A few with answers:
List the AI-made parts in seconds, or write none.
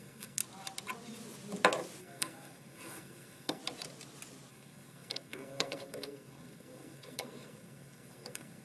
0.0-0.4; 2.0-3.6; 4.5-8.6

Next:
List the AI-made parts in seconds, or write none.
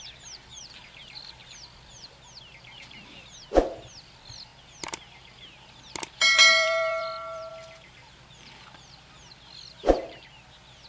0.5-1.2; 6.5-7.5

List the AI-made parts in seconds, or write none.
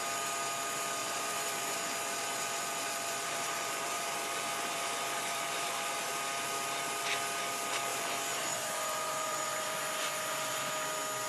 1.0-6.1; 7.9-10.7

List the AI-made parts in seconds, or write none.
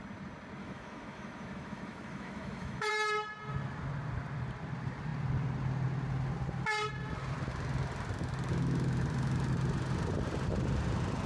0.6-2.9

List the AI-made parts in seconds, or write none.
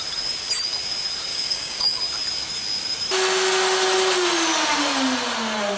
1.3-2.0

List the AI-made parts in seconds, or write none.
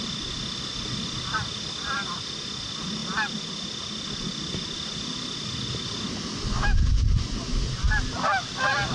none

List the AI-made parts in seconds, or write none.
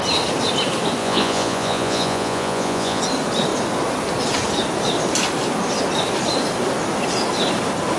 1.0-3.0